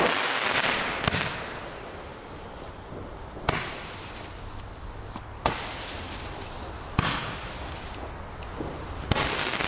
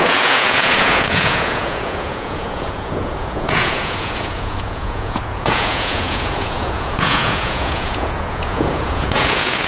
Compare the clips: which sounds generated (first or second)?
second